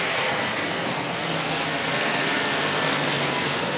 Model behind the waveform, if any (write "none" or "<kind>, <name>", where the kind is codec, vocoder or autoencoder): codec, SNAC